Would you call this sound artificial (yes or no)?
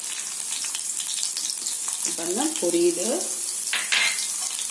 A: no